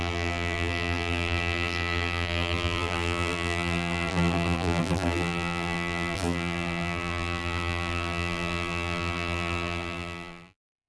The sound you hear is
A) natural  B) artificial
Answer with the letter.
B